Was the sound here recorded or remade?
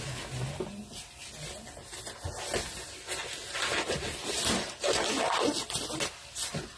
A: recorded